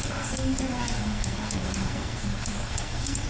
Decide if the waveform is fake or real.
fake